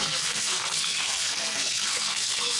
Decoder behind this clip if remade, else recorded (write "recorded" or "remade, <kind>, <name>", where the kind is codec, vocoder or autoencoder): remade, codec, SNAC